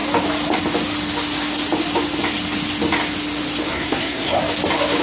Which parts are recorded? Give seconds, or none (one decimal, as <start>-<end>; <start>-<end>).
0.0-3.7; 4.4-5.0